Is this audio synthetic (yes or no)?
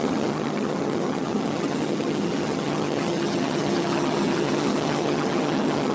yes